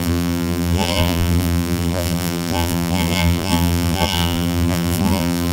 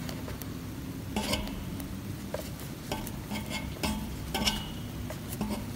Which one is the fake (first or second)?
first